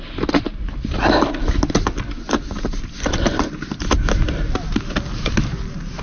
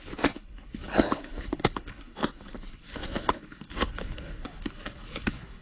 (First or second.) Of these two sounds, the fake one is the second